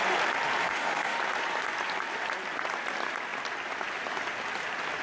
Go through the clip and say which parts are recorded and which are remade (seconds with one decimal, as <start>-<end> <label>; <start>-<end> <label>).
0.0-0.6 recorded; 0.6-1.2 remade; 1.2-5.0 recorded